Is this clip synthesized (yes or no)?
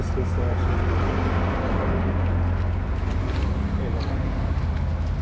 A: no